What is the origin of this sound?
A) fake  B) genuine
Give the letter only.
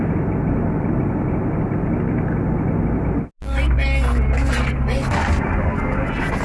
B